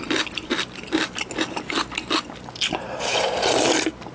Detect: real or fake real